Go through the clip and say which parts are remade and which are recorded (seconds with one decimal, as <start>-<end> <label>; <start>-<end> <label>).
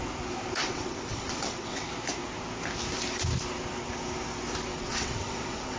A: 0.0-0.6 recorded; 0.6-1.9 remade; 1.9-4.7 recorded; 4.7-5.8 remade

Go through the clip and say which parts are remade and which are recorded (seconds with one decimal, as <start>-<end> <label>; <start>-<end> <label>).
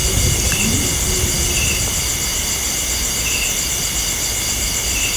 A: 0.0-5.2 recorded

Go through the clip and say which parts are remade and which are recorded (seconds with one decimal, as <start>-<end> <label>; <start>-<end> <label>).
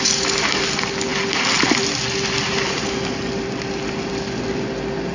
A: 0.0-5.1 recorded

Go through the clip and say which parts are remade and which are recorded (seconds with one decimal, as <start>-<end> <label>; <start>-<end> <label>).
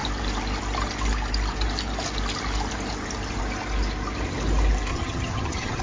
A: 0.0-4.9 recorded; 4.9-5.8 remade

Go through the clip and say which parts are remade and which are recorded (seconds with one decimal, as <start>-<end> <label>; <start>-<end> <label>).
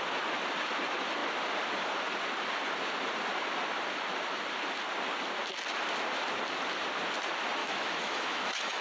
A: 0.0-7.6 recorded; 7.6-8.8 remade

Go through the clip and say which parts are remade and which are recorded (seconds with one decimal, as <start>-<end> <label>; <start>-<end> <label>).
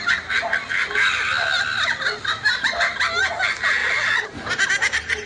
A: 0.0-0.8 recorded; 0.8-3.2 remade; 3.2-3.8 recorded; 3.8-5.3 remade